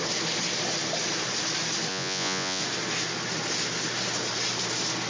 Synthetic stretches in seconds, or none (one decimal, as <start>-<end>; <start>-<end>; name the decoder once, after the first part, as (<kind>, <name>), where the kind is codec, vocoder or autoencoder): 1.9-2.6 (vocoder, Vocos)